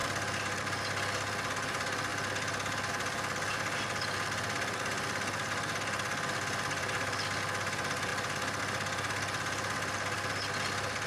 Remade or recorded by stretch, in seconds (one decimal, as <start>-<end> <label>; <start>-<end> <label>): 0.0-11.1 recorded